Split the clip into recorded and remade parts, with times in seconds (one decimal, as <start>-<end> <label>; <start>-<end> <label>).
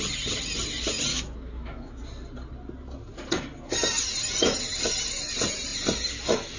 0.0-1.1 recorded; 1.1-2.0 remade; 2.0-6.6 recorded